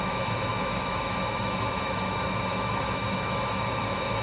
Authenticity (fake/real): fake